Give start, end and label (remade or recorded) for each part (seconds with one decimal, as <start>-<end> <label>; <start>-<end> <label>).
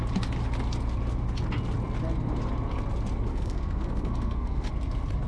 0.0-3.3 recorded; 3.3-4.7 remade; 4.7-5.3 recorded